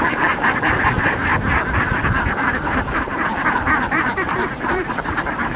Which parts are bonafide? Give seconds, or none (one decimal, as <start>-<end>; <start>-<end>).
1.3-2.3; 3.1-3.9